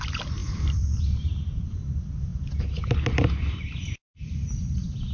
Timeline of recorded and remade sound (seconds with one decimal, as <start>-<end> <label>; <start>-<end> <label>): 0.0-0.4 recorded; 0.4-1.0 remade; 1.0-5.1 recorded